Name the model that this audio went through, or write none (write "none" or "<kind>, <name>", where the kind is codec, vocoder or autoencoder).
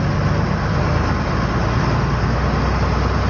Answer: none